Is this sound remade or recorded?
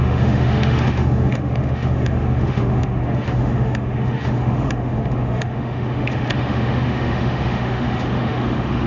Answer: remade